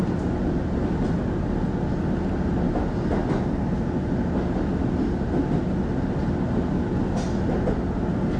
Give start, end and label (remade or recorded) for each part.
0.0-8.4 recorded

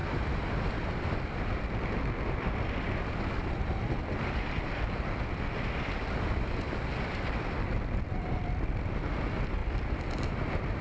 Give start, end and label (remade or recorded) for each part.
0.0-10.8 remade

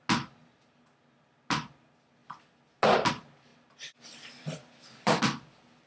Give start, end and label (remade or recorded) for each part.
0.0-3.5 recorded; 3.5-5.2 remade; 5.2-5.9 recorded

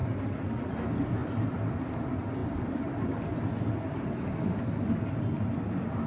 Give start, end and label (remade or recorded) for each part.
0.0-0.7 remade; 0.7-1.2 recorded; 1.2-1.9 remade; 1.9-2.4 recorded; 2.4-3.8 remade; 3.8-6.1 recorded

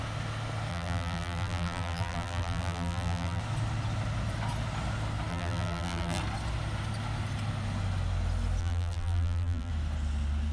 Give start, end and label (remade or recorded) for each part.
0.0-0.7 recorded; 0.7-3.4 remade; 3.4-5.3 recorded; 5.3-6.2 remade; 6.2-8.6 recorded; 8.6-9.7 remade; 9.7-10.5 recorded